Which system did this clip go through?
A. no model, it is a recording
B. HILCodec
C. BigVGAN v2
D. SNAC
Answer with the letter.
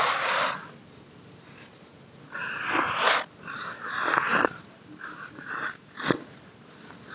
A